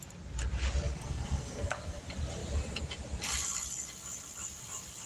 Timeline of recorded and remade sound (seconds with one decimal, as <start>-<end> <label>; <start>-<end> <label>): 0.0-0.9 recorded; 0.9-2.0 remade; 2.0-5.1 recorded